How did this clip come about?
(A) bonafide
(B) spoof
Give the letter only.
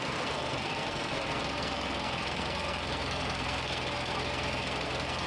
B